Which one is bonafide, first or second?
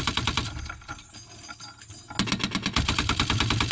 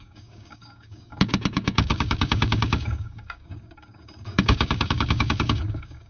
first